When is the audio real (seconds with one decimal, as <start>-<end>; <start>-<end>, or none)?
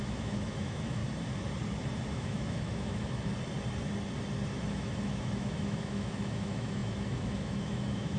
1.0-2.1; 3.3-4.7